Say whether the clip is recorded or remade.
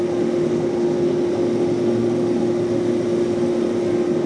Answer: recorded